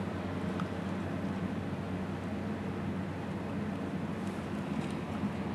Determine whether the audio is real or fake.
real